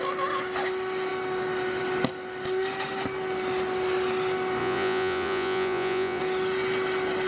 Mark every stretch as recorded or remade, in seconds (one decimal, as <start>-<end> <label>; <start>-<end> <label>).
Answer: 0.0-4.6 recorded; 4.6-6.2 remade; 6.2-7.3 recorded

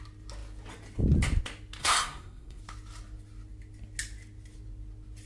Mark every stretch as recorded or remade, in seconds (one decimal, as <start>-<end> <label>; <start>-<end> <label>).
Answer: 0.0-1.8 recorded; 1.8-2.6 remade; 2.6-5.3 recorded

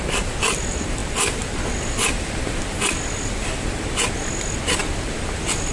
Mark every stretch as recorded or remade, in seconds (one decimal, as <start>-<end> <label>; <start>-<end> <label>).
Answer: 0.0-5.7 recorded

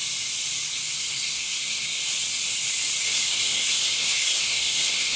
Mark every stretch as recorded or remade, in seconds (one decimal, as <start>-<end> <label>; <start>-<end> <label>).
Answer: 0.0-0.9 recorded; 0.9-2.0 remade; 2.0-3.1 recorded; 3.1-5.2 remade

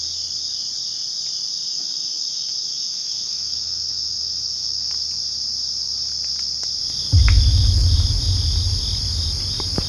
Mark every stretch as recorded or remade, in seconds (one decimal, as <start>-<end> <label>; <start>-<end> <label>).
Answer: 0.0-1.7 recorded; 1.7-4.9 remade; 4.9-9.9 recorded

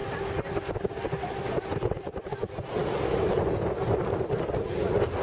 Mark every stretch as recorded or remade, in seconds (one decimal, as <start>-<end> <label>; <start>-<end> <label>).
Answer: 0.0-5.2 recorded

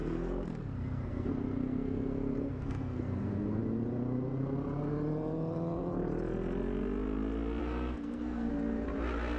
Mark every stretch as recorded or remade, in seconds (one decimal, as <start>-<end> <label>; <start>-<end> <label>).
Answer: 0.0-3.6 remade; 3.6-7.6 recorded; 7.6-8.5 remade; 8.5-9.4 recorded

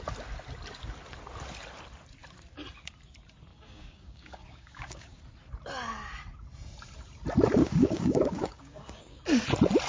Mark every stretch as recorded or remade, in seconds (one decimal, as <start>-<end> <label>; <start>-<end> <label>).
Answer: 0.0-3.5 recorded; 3.5-5.2 remade; 5.2-7.6 recorded; 7.6-9.2 remade; 9.2-9.9 recorded